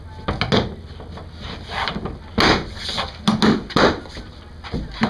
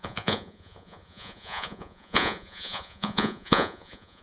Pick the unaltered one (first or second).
first